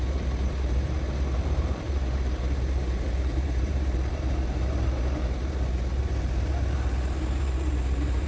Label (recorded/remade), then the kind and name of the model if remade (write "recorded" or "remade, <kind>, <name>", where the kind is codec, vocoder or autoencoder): remade, vocoder, BigVGAN v2